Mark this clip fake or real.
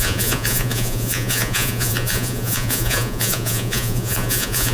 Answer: fake